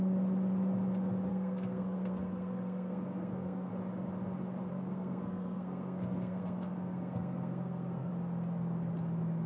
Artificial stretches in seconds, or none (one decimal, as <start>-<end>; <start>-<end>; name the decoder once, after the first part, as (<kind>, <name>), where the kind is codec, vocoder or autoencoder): 1.3-3.7 (codec, SNAC); 4.7-8.1